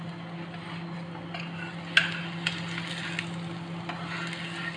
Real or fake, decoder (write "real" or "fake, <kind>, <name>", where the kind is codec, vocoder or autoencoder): real